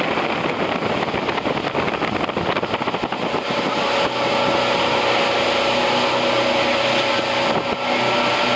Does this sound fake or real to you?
real